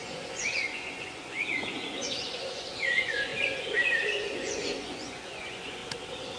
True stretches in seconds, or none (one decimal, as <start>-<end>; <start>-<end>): 5.8-6.4